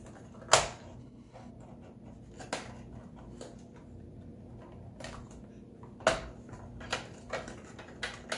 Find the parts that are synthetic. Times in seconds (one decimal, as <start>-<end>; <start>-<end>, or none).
1.0-1.5